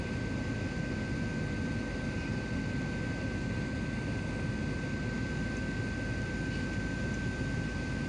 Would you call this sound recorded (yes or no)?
yes